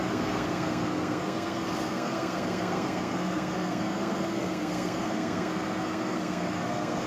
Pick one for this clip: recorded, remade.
remade